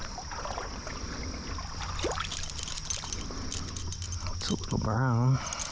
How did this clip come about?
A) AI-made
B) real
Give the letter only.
B